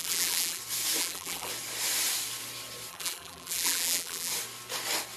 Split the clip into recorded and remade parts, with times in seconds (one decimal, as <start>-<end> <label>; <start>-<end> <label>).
0.0-0.6 remade; 0.6-1.0 recorded; 1.0-1.5 remade; 1.5-2.9 recorded; 2.9-4.3 remade; 4.3-5.2 recorded